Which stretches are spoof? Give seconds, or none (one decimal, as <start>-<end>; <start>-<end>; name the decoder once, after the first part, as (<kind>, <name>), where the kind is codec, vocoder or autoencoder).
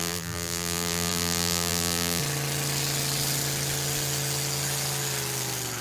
0.0-2.2 (vocoder, BigVGAN v2)